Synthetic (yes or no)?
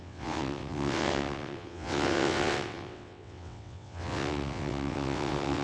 yes